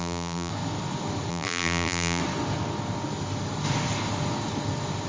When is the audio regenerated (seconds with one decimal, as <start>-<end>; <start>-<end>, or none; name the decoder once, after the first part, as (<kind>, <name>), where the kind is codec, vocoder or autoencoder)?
0.0-0.5 (vocoder, BigVGAN v2); 1.3-2.2